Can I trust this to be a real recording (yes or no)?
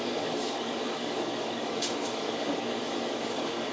no